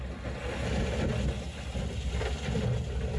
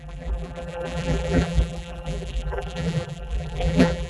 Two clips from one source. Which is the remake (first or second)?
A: second